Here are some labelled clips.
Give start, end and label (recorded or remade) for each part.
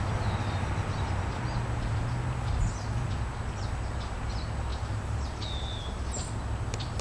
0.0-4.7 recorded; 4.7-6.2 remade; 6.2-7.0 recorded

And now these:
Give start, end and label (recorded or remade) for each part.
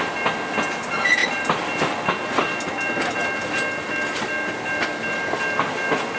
0.0-6.2 recorded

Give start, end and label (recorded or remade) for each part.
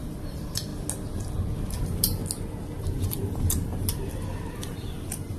0.0-0.7 remade; 0.7-1.7 recorded; 1.7-2.2 remade; 2.2-2.8 recorded; 2.8-3.7 remade; 3.7-4.5 recorded; 4.5-5.4 remade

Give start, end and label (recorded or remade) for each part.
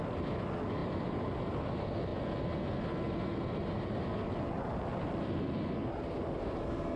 0.0-0.8 recorded; 0.8-1.6 remade; 1.6-4.9 recorded; 4.9-5.4 remade; 5.4-7.0 recorded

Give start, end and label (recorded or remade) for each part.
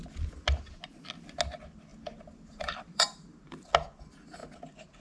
0.0-1.9 recorded; 1.9-3.7 remade; 3.7-5.0 recorded